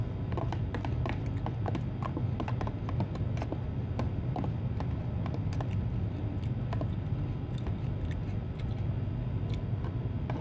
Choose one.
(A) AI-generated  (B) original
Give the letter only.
B